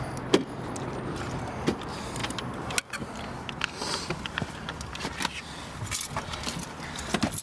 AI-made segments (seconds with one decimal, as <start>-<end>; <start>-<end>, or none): none